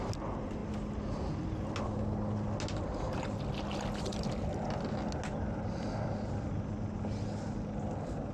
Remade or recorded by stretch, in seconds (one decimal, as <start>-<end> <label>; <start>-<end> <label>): 0.0-8.3 recorded